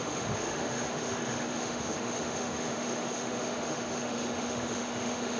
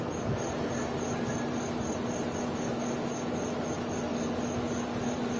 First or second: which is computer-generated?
first